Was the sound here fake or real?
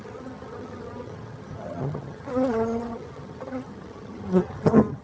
fake